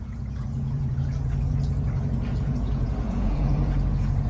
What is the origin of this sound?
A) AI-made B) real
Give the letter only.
A